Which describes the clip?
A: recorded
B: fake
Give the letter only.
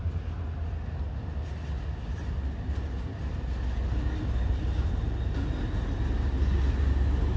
A